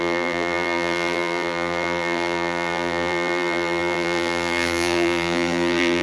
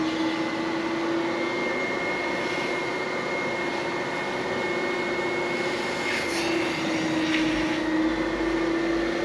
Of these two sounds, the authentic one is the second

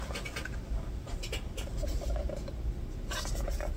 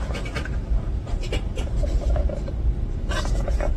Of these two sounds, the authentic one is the first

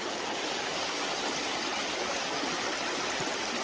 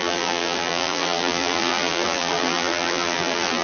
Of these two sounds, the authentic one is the first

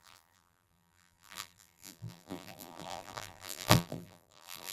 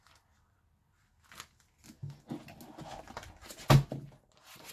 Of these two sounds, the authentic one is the second